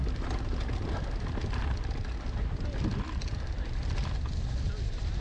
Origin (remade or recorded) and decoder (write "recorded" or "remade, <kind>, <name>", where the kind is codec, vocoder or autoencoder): recorded